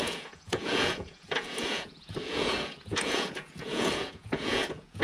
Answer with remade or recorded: remade